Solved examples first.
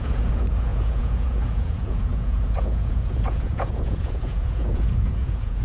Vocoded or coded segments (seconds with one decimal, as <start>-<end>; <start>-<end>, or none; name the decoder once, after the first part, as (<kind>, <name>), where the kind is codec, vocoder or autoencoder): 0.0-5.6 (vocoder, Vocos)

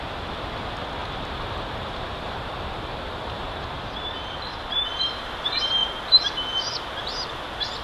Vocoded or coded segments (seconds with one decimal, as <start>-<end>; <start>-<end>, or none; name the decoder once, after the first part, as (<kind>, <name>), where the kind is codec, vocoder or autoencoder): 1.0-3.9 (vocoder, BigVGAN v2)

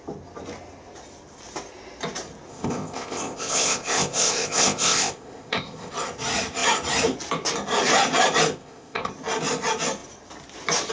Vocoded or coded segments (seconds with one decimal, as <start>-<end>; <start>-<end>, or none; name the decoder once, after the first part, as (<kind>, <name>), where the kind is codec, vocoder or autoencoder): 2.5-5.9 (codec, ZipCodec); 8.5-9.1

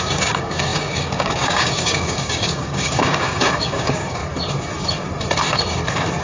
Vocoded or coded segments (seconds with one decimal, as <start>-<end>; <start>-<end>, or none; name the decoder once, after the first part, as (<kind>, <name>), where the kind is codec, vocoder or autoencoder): 0.0-4.2 (codec, DAC)

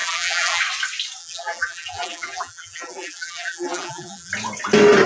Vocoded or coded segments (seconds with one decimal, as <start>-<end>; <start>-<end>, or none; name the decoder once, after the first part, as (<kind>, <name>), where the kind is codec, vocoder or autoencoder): 0.0-0.6 (vocoder, BigVGAN v2); 1.2-4.3

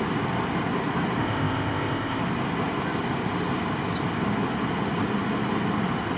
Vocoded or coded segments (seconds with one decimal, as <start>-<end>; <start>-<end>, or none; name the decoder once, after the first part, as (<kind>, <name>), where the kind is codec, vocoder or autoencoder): 1.2-2.2 (codec, ZipCodec)

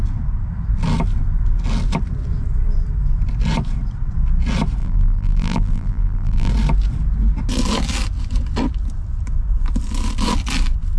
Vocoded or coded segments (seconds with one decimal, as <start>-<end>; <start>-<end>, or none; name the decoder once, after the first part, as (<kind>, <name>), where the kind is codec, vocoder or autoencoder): 4.8-6.5 (vocoder, BigVGAN v2)

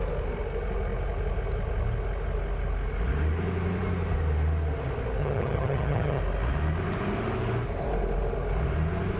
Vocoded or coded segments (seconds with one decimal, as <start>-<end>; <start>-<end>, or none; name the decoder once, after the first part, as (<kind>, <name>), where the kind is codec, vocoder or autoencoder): 5.2-6.2 (vocoder, HiFi-GAN)